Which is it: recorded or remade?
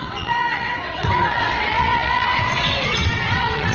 remade